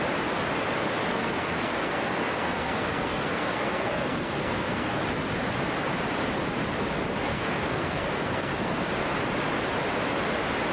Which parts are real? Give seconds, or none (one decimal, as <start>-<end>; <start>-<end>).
0.0-1.1; 5.0-7.3; 8.9-10.7